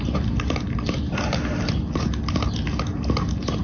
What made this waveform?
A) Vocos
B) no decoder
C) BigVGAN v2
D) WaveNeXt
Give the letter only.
B